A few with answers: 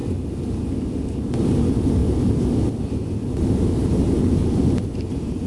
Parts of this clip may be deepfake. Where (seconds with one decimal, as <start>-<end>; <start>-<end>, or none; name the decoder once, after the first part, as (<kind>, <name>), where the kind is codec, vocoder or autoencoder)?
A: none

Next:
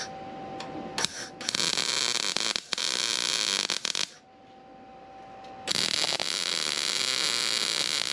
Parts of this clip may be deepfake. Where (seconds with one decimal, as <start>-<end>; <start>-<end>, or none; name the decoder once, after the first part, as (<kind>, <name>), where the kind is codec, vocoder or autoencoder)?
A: none

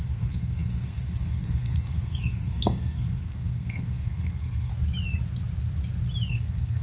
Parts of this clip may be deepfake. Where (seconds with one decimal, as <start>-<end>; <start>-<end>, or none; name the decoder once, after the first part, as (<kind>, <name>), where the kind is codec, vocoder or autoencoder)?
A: 0.0-4.7 (codec, SNAC); 6.3-6.8

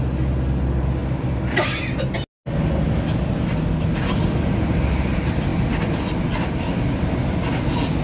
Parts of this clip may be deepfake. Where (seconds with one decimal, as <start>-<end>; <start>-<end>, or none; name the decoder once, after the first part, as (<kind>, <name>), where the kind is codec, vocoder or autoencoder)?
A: none

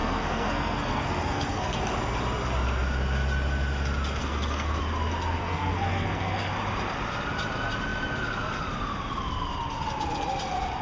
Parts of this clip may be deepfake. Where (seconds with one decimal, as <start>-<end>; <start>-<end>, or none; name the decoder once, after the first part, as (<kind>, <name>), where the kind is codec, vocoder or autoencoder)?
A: 0.0-1.8 (codec, SNAC); 4.2-4.8; 5.4-6.5